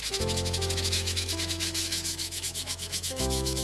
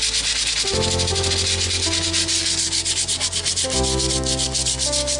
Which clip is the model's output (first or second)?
first